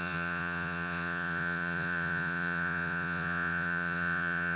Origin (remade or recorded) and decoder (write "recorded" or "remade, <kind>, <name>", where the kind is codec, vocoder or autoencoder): remade, vocoder, Vocos